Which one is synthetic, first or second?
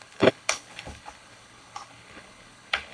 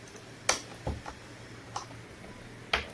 first